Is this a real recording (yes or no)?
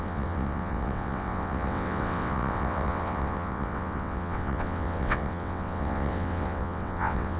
no